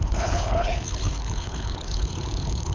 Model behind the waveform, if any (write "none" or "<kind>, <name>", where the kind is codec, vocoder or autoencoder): codec, HILCodec